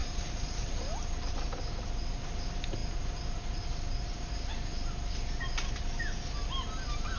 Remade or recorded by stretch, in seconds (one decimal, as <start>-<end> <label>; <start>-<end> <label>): 0.0-1.3 remade; 1.3-7.2 recorded